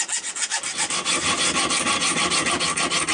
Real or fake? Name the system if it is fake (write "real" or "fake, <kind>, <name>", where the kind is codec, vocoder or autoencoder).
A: real